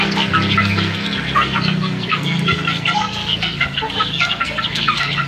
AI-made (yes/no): yes